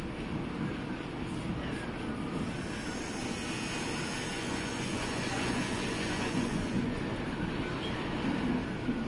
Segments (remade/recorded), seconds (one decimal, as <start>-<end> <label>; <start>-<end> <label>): 0.0-4.3 recorded; 4.3-7.0 remade; 7.0-9.1 recorded